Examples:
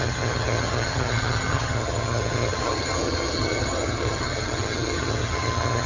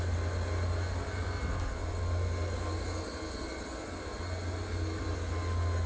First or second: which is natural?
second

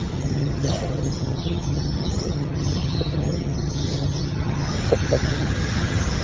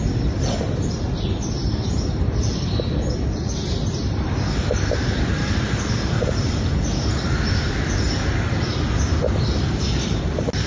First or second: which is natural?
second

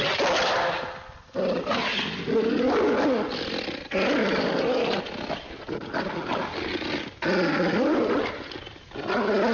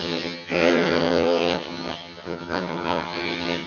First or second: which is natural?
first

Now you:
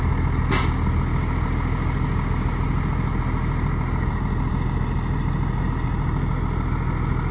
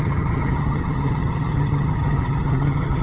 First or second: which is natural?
first